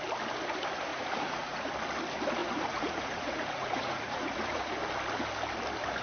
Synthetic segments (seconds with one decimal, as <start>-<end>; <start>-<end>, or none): 0.9-1.7; 2.4-4.7